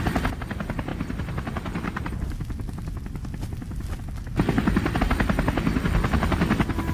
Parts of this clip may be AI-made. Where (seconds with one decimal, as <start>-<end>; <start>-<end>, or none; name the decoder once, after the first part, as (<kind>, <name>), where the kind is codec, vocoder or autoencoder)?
none